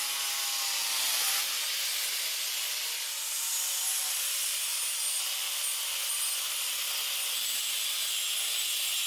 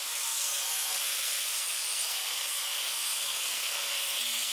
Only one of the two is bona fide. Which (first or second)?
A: first